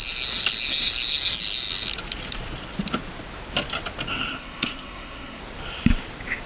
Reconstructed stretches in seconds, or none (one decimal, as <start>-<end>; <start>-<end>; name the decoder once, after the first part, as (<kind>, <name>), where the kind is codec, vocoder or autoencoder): 4.3-5.4 (codec, SNAC)